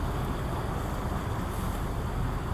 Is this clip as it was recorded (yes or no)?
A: yes